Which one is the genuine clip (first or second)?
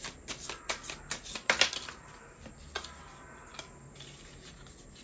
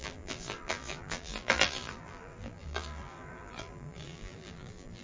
first